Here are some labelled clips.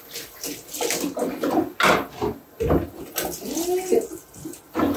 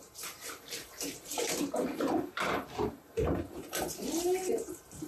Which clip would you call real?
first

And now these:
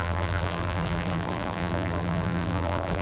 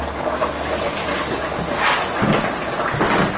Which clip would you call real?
second